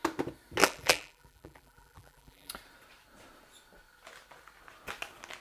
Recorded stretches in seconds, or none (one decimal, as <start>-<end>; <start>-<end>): 0.0-0.6; 2.5-5.4